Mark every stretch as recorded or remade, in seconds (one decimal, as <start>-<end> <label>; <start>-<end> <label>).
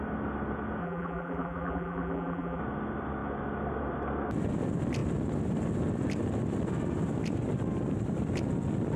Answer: 0.0-0.8 recorded; 0.8-2.6 remade; 2.6-9.0 recorded